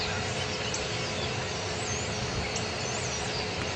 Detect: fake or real real